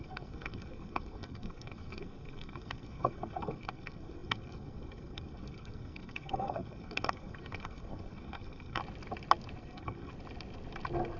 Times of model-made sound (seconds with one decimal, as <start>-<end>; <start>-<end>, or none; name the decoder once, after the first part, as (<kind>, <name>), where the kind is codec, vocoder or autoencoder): 0.0-8.8 (codec, SNAC); 9.6-10.1